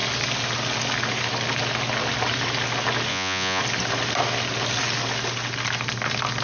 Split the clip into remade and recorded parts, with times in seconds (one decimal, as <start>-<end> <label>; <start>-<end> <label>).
0.0-3.1 recorded; 3.1-3.6 remade; 3.6-6.4 recorded